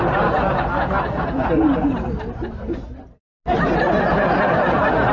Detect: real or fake real